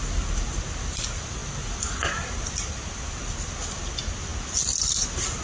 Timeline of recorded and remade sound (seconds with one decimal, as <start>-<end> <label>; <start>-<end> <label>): 0.0-5.4 recorded